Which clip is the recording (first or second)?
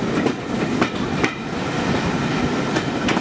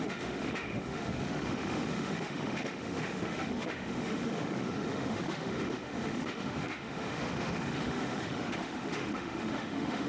first